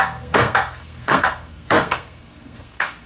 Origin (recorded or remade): remade